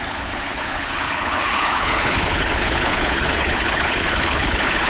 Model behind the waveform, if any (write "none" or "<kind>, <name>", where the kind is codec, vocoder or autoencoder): codec, HILCodec